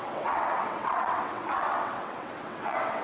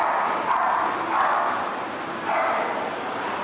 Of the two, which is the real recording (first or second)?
second